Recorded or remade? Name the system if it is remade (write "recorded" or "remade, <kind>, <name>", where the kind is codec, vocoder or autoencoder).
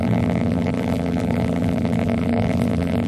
remade, vocoder, BigVGAN v2